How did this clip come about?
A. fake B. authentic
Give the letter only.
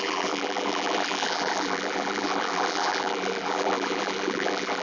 A